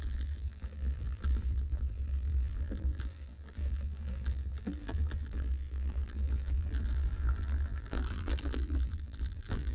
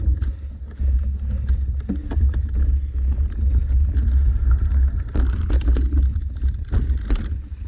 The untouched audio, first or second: second